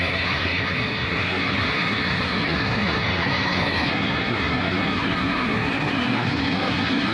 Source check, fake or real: fake